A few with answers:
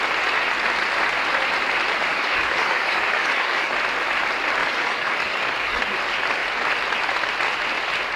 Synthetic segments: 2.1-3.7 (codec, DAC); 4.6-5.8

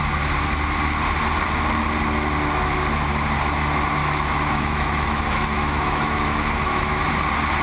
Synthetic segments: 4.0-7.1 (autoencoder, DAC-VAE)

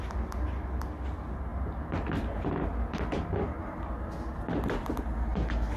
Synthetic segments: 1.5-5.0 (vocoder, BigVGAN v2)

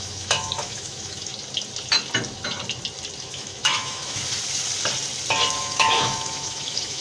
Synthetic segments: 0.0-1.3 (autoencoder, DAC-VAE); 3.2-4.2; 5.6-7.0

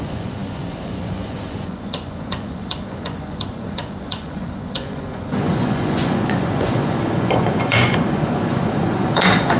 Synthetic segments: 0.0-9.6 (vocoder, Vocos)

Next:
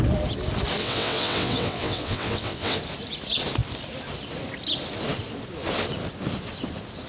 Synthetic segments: 0.8-2.8 (vocoder, WaveNeXt)

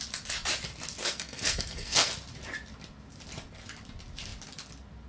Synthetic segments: 1.0-2.1 (codec, SNAC)

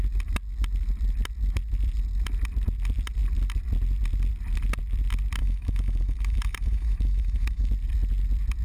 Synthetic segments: 5.4-7.7 (autoencoder, DAC-VAE)